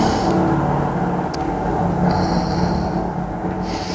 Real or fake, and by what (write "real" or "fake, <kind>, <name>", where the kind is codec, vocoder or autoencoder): real